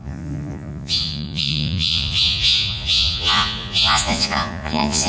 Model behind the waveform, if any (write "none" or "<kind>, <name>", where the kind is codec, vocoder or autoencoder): vocoder, Vocos